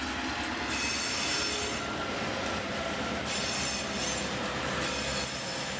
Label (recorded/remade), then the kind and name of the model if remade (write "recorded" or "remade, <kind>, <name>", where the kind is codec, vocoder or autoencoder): recorded